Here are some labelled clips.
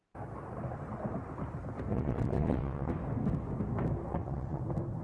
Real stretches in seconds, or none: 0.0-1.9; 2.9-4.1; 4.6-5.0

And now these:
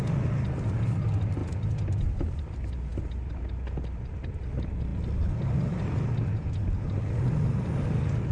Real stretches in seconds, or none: 0.0-8.3